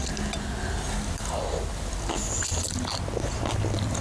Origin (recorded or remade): recorded